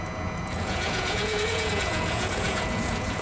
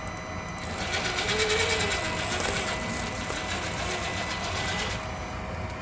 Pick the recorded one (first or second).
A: second